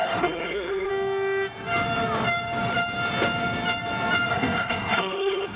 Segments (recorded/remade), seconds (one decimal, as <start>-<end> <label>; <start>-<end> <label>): 0.0-0.9 remade; 0.9-4.3 recorded; 4.3-5.6 remade